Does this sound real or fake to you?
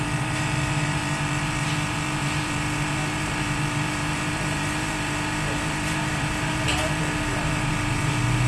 fake